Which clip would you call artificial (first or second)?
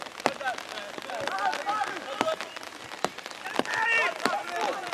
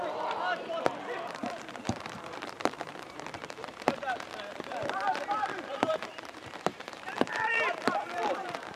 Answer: second